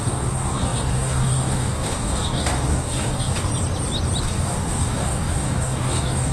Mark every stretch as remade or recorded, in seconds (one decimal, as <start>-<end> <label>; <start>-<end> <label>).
0.0-3.5 remade; 3.5-4.2 recorded; 4.2-6.3 remade